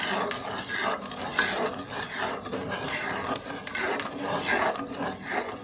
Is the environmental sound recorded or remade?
recorded